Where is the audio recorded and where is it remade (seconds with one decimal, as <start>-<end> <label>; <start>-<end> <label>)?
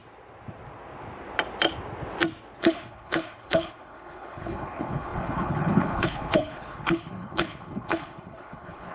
0.0-2.6 recorded; 2.6-8.9 remade